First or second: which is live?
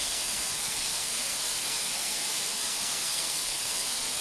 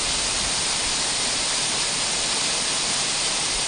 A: second